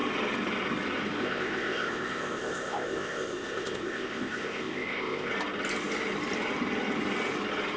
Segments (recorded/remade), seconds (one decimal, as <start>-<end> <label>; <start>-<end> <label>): 0.0-1.2 recorded; 1.2-5.3 remade; 5.3-7.8 recorded